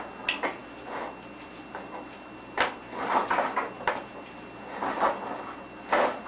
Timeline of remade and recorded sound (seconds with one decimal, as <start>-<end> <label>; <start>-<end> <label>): 0.0-6.3 recorded